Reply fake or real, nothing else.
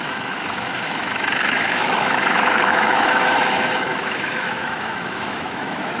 fake